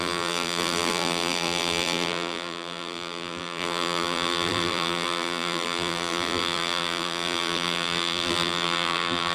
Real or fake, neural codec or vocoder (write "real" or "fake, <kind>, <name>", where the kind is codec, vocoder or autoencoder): fake, vocoder, BigVGAN v2